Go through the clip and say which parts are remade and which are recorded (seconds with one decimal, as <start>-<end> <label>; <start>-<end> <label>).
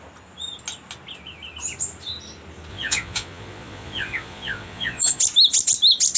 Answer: 0.0-2.7 recorded; 2.7-5.2 remade; 5.2-6.2 recorded